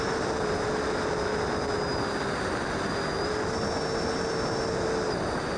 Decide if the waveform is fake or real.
real